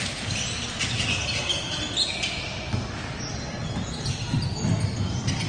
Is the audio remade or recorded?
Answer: recorded